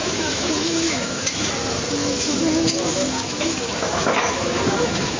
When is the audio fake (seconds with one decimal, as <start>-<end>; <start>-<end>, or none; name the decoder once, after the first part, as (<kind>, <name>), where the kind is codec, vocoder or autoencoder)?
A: 0.0-1.5 (autoencoder, DAC-VAE); 2.0-5.2